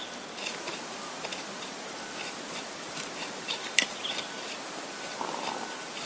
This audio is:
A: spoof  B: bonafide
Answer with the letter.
B